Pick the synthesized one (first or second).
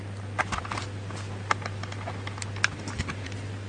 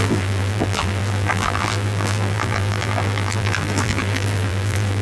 second